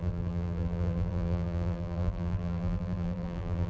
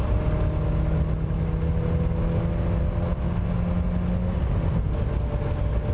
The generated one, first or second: first